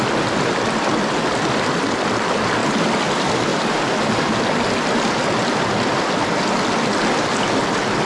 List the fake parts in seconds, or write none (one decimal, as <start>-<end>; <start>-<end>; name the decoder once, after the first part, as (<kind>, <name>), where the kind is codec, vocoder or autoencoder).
3.5-4.4 (vocoder, BigVGAN v2)